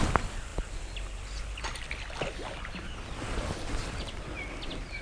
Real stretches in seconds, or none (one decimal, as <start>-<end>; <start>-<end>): 0.0-5.0